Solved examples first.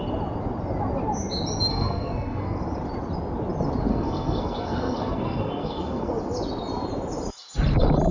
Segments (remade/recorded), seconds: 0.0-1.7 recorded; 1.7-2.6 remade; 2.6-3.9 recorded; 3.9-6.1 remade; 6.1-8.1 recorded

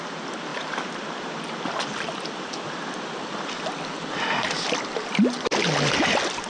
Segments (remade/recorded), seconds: 0.0-0.5 recorded; 0.5-4.4 remade; 4.4-6.5 recorded